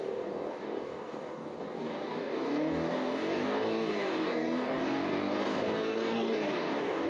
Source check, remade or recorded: remade